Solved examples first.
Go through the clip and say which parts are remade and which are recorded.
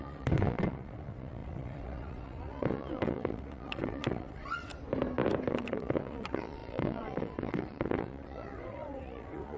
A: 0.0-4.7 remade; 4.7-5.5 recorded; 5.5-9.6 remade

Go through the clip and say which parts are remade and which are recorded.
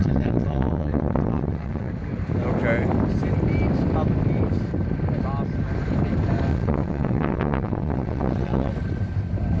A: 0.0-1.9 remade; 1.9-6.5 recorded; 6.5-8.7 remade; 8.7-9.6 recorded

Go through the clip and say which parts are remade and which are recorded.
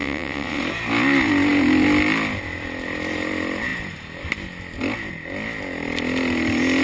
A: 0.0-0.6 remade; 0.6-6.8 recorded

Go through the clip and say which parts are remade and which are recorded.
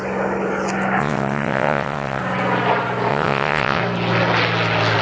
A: 0.0-1.0 recorded; 1.0-2.2 remade; 2.2-3.1 recorded; 3.1-3.8 remade; 3.8-5.0 recorded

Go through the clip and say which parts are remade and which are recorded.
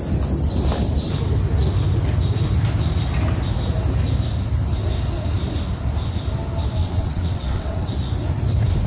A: 0.0-6.8 recorded; 6.8-7.9 remade; 7.9-8.9 recorded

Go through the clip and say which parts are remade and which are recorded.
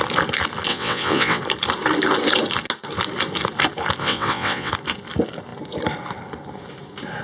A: 0.0-0.7 recorded; 0.7-1.4 remade; 1.4-4.0 recorded; 4.0-4.7 remade; 4.7-7.2 recorded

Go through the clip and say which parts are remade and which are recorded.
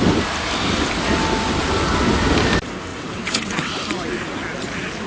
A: 0.0-2.9 recorded; 2.9-3.7 remade; 3.7-5.1 recorded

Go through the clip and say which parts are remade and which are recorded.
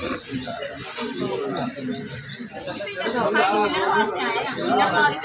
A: 0.0-5.2 recorded